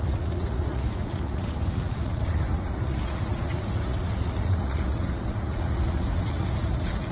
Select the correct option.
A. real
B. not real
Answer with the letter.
B